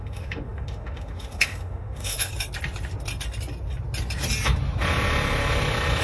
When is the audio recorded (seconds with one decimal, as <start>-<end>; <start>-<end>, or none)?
2.3-6.0